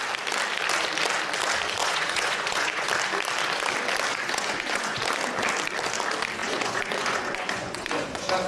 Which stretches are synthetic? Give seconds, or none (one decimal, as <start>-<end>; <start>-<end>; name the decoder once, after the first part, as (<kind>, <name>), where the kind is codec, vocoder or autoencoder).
1.8-2.9 (vocoder, Vocos); 4.1-5.0; 6.4-8.5